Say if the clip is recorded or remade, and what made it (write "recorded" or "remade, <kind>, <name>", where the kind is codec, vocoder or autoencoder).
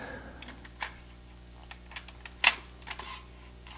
recorded